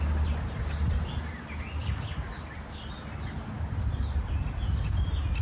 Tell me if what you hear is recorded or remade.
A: recorded